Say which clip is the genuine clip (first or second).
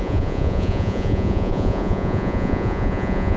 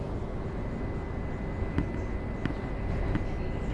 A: second